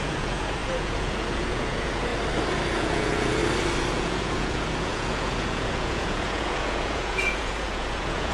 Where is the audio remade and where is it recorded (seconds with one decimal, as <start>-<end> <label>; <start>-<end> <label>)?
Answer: 0.0-2.1 remade; 2.1-2.7 recorded; 2.7-3.4 remade; 3.4-3.9 recorded; 3.9-8.3 remade